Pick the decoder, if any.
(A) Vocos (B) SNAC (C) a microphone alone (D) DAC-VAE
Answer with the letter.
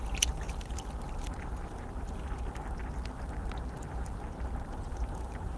C